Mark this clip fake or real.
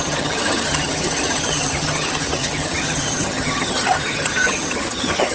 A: fake